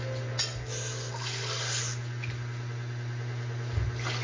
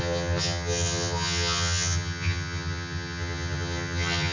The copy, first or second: second